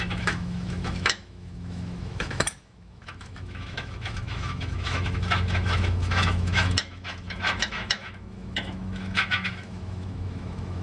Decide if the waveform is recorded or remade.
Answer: remade